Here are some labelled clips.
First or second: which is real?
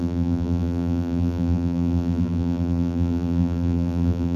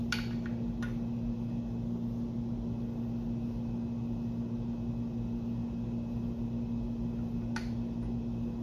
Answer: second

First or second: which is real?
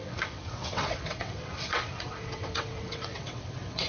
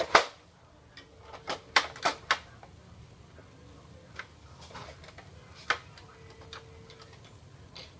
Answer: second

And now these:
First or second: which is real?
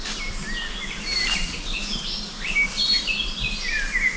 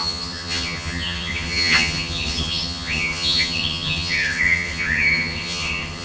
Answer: first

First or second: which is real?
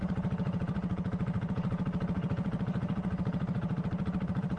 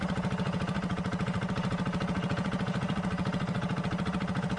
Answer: second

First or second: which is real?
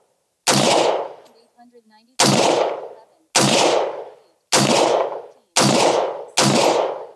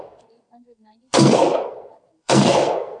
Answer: first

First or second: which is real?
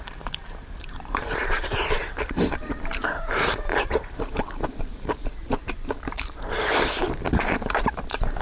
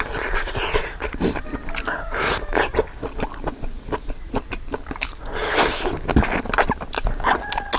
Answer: second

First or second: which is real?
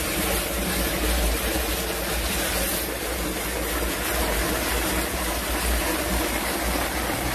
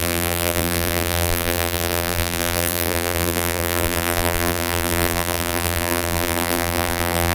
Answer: first